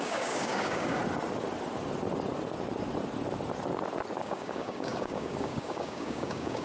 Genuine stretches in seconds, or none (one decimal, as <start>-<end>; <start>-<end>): 1.0-4.2